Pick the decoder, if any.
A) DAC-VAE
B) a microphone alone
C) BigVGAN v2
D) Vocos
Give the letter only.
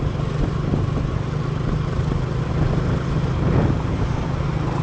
B